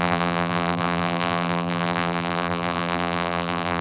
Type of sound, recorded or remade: remade